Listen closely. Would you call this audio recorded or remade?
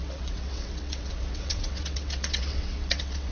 remade